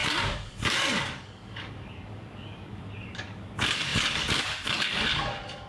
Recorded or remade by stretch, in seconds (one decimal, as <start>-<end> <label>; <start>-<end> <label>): 0.0-5.7 remade